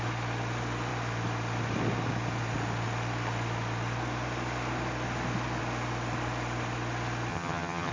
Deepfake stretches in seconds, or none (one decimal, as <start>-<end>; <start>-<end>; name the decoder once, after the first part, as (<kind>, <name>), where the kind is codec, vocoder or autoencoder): 7.3-7.9 (vocoder, HiFi-GAN)